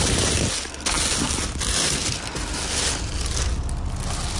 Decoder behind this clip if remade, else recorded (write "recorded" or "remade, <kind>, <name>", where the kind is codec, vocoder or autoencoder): recorded